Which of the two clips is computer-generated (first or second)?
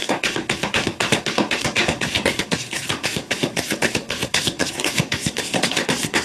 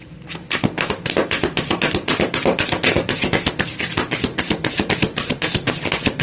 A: first